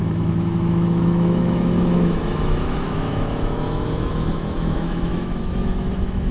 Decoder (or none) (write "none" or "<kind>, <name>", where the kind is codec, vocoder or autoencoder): autoencoder, DAC-VAE